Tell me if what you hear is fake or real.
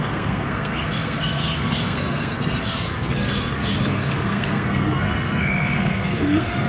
fake